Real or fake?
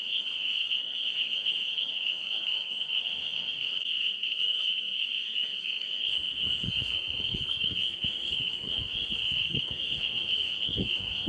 fake